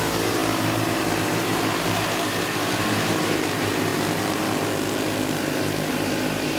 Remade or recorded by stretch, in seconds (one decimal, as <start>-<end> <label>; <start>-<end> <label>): 0.0-3.9 remade; 3.9-5.9 recorded; 5.9-6.6 remade